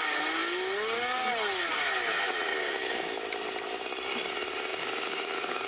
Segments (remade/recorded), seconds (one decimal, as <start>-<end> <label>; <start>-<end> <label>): 0.0-2.5 recorded; 2.5-3.2 remade; 3.2-4.7 recorded; 4.7-5.7 remade